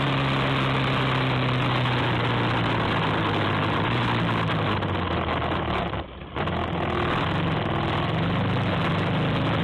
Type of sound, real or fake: real